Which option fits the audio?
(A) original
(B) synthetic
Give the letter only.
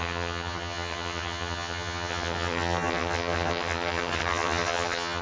B